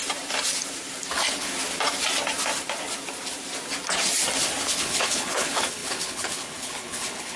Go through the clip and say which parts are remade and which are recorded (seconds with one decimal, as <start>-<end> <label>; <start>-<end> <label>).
0.0-1.1 recorded; 1.1-1.5 remade; 1.5-4.6 recorded; 4.6-7.4 remade